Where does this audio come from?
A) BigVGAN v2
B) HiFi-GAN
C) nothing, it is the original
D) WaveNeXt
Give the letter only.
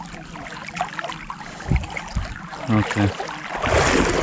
C